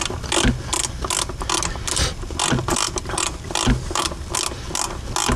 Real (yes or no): yes